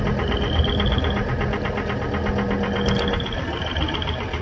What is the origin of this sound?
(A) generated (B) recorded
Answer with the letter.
B